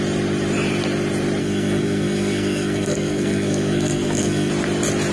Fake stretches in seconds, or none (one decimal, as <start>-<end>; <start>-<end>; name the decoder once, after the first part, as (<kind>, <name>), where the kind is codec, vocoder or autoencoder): 1.4-4.5 (codec, SNAC)